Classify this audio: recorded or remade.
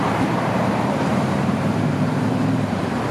remade